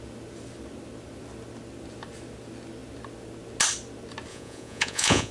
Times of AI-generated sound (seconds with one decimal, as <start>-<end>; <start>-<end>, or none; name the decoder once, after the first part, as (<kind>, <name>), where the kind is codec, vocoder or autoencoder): 4.3-5.3 (vocoder, Vocos)